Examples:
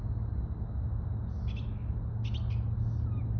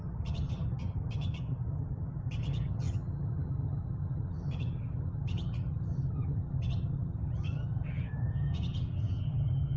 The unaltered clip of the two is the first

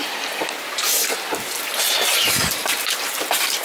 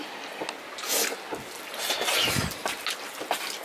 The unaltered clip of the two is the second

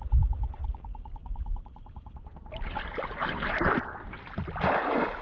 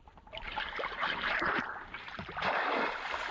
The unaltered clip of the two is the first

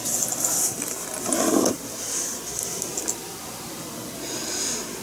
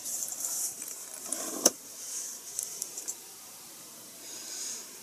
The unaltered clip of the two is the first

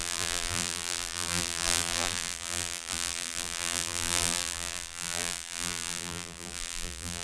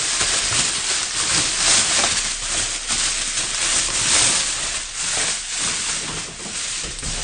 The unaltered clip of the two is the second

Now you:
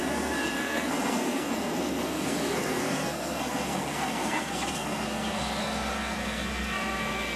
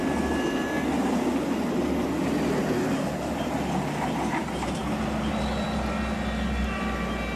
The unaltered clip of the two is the second